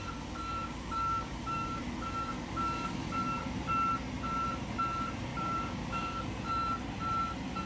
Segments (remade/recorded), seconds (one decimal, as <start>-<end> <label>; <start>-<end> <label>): 0.0-0.6 recorded; 0.6-1.8 remade; 1.8-5.3 recorded; 5.3-6.2 remade; 6.2-7.7 recorded